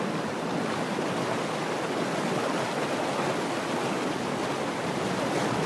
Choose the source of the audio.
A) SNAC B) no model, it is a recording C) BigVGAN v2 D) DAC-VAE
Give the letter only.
B